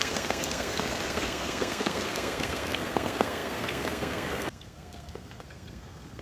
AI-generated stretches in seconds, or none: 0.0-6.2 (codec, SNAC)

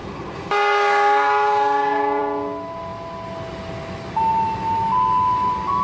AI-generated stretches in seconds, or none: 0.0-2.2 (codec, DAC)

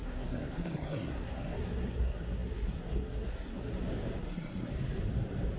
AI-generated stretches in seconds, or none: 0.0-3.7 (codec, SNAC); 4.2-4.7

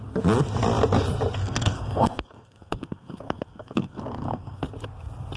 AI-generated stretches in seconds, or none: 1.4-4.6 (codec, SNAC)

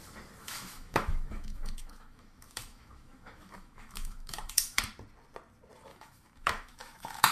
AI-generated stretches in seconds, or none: 0.4-4.8 (autoencoder, DAC-VAE); 5.9-7.3

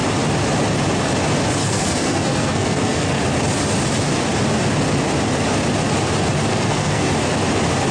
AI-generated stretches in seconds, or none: 1.6-3.2 (codec, SNAC); 6.5-7.1

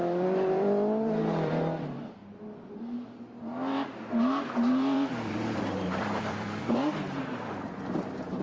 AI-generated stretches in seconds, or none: 0.0-2.2 (vocoder, BigVGAN v2); 4.5-8.4

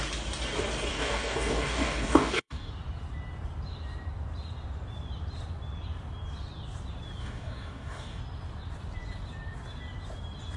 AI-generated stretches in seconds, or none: 0.9-2.7 (codec, DAC); 7.2-8.2